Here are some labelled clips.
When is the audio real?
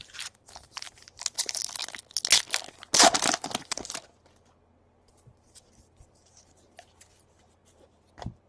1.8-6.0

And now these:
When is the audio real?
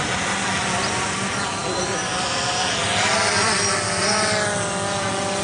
0.0-5.4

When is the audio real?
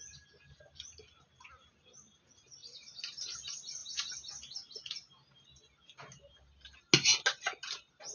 0.0-8.1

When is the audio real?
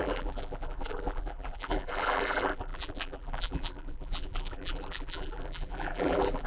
none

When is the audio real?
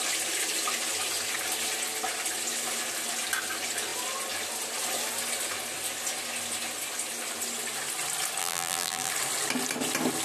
0.0-8.4; 9.1-10.2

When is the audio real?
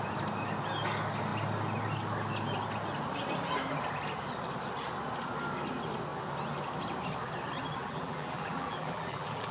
0.0-7.8